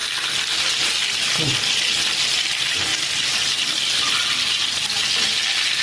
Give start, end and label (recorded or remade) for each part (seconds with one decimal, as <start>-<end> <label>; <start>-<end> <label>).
0.0-5.8 recorded